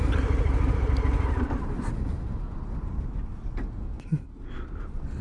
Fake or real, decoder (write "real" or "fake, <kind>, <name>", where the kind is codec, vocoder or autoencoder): real